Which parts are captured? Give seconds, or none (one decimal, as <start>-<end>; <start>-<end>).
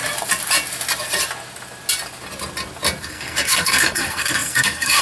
0.0-3.0